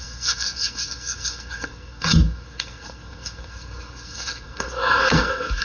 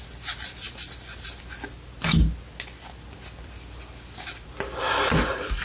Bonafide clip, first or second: second